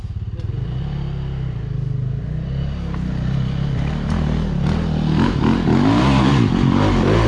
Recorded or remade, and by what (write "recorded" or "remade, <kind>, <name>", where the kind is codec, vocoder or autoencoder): recorded